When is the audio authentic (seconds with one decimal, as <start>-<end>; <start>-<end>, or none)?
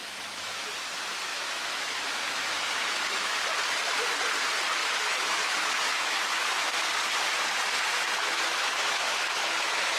0.6-1.3; 3.4-4.8; 6.8-7.9